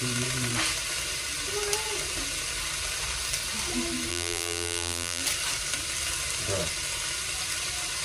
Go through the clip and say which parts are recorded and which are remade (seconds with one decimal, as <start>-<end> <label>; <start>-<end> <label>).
0.0-4.1 recorded; 4.1-5.2 remade; 5.2-8.0 recorded

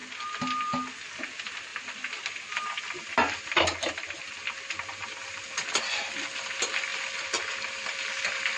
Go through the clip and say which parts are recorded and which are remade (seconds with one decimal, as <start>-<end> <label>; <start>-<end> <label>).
0.0-1.7 recorded; 1.7-5.8 remade; 5.8-6.9 recorded; 6.9-8.2 remade; 8.2-8.6 recorded

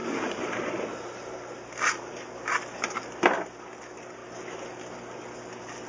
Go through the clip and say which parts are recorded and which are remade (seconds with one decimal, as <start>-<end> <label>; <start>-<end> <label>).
0.0-0.7 remade; 0.7-5.9 recorded

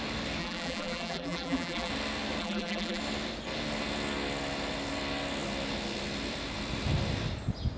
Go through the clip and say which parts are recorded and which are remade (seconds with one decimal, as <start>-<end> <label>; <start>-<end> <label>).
0.0-0.4 recorded; 0.4-1.9 remade; 1.9-2.4 recorded; 2.4-3.0 remade; 3.0-7.8 recorded

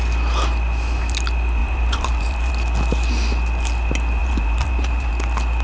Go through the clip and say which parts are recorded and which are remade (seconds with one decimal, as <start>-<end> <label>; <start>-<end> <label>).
0.0-1.6 recorded; 1.6-2.5 remade; 2.5-4.2 recorded; 4.2-5.1 remade; 5.1-5.6 recorded